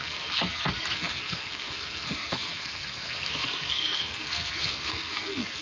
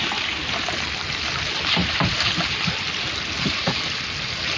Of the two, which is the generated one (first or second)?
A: first